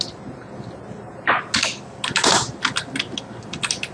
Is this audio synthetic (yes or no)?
no